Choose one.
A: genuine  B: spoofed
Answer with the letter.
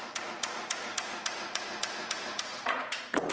B